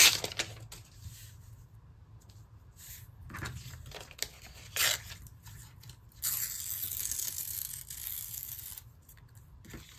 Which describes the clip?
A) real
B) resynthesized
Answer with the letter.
A